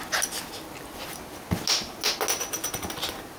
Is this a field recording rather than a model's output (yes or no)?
yes